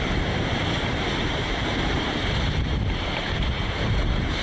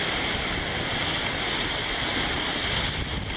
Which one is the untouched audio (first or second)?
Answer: second